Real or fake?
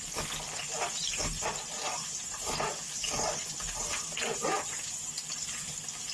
real